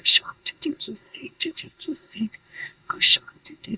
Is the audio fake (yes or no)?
yes